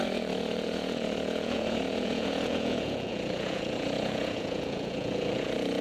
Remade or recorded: remade